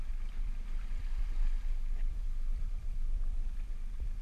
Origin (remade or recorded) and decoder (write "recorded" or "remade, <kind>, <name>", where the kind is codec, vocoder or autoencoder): remade, vocoder, BigVGAN v2